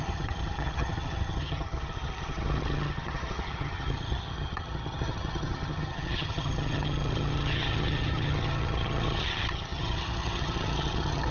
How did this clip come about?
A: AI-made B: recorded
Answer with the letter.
A